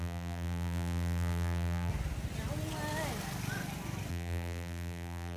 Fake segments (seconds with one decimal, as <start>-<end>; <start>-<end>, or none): 0.0-1.9; 4.1-5.4